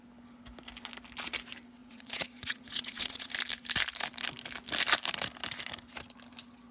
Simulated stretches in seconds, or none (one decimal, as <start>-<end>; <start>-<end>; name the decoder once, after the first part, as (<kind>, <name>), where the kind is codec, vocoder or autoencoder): 1.8-3.3 (vocoder, Vocos)